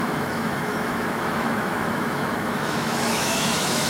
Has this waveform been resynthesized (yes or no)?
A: yes